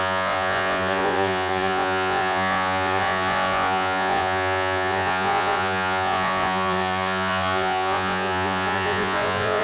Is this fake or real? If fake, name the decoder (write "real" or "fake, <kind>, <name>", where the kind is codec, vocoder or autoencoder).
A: fake, vocoder, Vocos